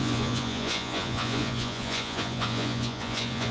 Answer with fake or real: fake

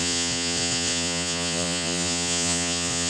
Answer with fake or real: fake